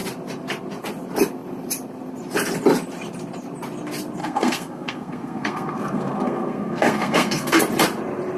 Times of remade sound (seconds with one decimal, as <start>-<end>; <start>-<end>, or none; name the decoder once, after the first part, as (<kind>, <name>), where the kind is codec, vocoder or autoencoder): 4.2-7.6 (codec, SNAC)